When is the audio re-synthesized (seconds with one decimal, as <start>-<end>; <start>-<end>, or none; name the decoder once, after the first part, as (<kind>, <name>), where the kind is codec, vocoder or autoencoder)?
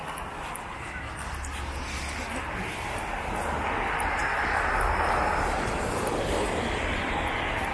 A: none